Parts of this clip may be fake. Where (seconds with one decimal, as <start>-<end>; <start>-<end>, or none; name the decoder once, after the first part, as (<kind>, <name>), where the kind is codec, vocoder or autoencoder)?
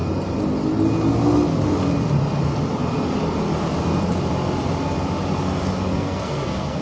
5.9-6.8 (codec, SNAC)